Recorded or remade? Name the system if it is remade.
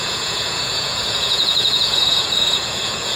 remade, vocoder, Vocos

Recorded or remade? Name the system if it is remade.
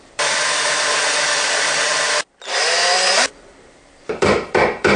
remade, vocoder, BigVGAN v2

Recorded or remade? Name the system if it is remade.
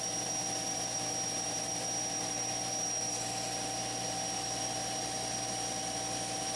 recorded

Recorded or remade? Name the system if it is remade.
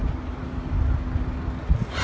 recorded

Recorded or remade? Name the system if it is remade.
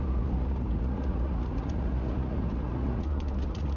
remade, vocoder, Vocos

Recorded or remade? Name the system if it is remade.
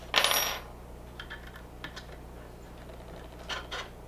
recorded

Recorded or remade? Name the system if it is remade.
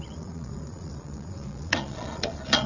remade, vocoder, Vocos